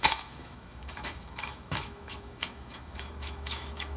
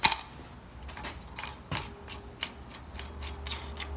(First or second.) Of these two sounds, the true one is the second